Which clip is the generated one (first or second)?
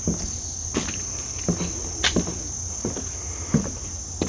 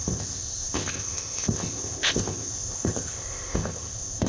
second